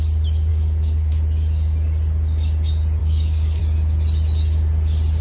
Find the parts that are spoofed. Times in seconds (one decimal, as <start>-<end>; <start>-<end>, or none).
0.5-1.1; 3.0-3.6